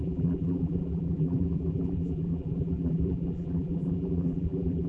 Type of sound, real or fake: fake